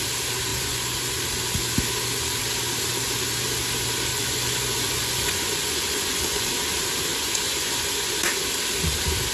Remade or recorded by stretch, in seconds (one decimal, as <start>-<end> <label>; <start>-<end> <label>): 0.0-0.5 recorded; 0.5-1.1 remade; 1.1-4.1 recorded; 4.1-6.5 remade; 6.5-7.1 recorded; 7.1-8.2 remade; 8.2-9.3 recorded